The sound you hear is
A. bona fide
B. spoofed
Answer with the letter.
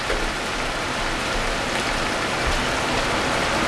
A